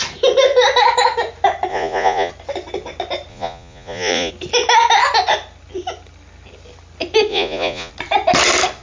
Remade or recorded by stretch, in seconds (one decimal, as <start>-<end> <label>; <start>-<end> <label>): 0.0-1.7 recorded; 1.7-2.3 remade; 2.3-3.3 recorded; 3.3-4.3 remade; 4.3-7.3 recorded; 7.3-7.9 remade; 7.9-8.8 recorded